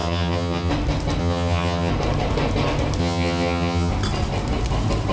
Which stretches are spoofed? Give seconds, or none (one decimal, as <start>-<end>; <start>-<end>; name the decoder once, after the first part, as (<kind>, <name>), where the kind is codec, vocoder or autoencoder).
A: 0.0-0.7 (vocoder, HiFi-GAN); 1.2-1.9; 3.0-3.9